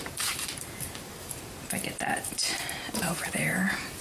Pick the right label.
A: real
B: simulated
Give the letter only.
B